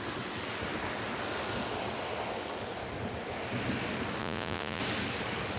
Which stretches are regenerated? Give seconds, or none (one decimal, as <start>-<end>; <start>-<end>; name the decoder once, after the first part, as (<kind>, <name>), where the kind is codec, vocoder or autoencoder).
4.2-4.8 (vocoder, Vocos)